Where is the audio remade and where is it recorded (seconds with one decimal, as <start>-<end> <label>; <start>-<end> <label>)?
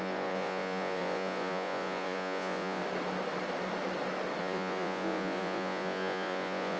0.0-2.8 remade; 2.8-4.4 recorded; 4.4-6.8 remade